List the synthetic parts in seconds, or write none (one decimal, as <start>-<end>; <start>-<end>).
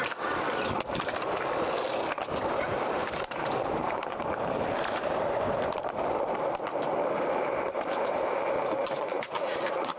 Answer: 2.4-10.0